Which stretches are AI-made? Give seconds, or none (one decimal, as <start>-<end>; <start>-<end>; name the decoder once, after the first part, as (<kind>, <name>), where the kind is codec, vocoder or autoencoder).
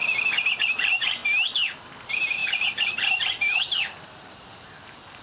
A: 0.6-1.2 (vocoder, BigVGAN v2); 1.8-5.2